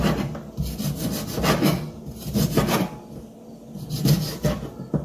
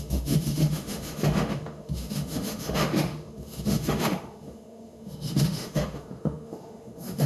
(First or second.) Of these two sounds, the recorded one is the first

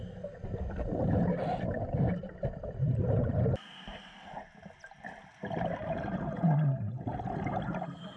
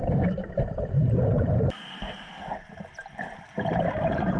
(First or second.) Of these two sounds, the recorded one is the first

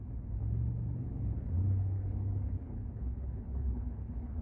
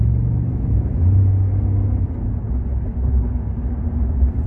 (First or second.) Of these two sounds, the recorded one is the second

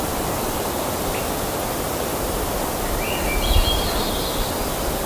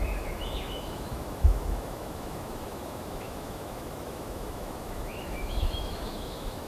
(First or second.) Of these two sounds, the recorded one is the first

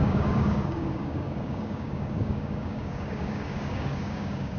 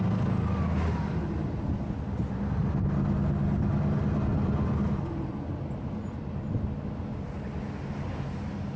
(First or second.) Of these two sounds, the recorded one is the second